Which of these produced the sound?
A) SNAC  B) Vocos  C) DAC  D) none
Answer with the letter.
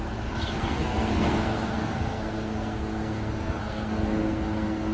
A